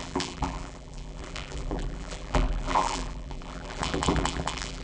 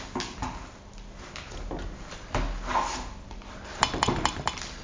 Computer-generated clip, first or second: first